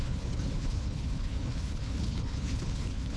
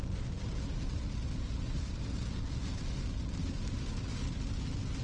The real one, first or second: second